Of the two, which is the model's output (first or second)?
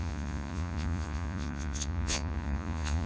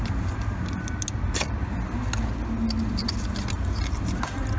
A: first